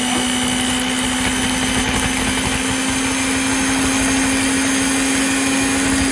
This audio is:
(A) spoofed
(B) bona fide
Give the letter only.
B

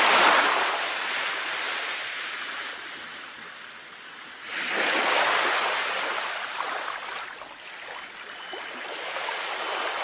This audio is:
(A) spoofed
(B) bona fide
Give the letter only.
B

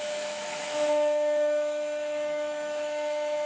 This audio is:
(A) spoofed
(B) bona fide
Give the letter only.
A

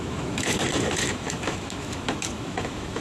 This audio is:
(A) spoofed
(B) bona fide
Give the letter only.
A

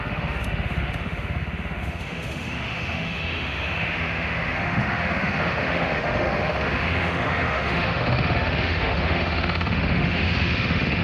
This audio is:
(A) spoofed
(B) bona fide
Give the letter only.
A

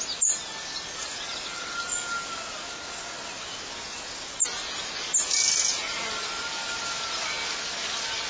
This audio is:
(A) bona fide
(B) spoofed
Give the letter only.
A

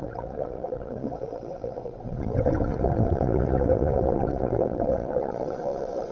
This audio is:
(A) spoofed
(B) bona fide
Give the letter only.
A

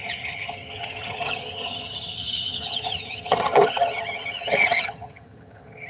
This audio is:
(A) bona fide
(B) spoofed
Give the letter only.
B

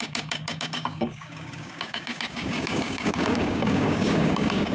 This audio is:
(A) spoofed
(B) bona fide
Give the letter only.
A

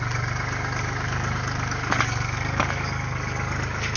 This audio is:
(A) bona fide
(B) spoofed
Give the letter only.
B